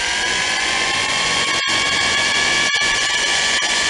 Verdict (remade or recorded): remade